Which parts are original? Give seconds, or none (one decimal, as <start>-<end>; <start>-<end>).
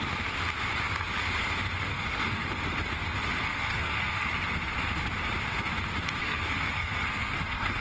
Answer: 0.0-1.9; 2.5-3.4; 4.3-6.2